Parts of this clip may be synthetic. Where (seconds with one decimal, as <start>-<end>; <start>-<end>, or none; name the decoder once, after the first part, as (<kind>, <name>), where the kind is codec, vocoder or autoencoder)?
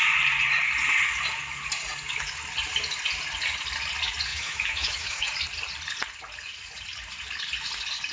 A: 4.3-5.3 (autoencoder, DAC-VAE)